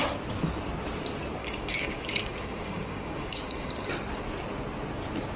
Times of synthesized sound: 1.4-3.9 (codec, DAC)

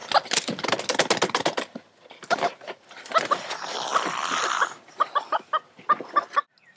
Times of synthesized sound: none

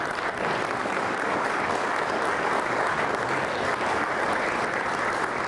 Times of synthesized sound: 0.8-4.1 (codec, DAC)

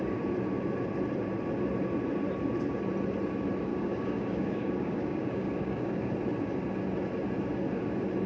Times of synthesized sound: 3.7-6.1 (codec, DAC)

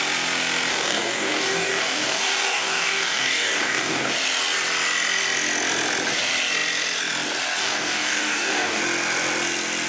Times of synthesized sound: 0.7-4.1 (codec, DAC); 7.6-8.8

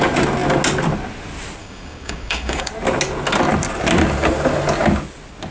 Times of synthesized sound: 1.6-2.7 (codec, DAC)

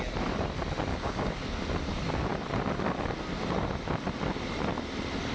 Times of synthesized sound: 0.9-1.4 (codec, DAC)

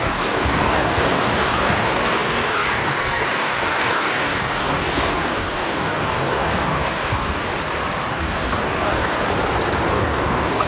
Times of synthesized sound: 0.0-7.5 (codec, DAC); 8.1-9.2; 9.9-10.7